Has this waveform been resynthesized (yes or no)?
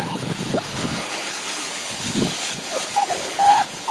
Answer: yes